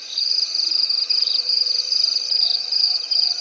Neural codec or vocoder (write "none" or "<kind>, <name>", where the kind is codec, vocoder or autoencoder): vocoder, BigVGAN v2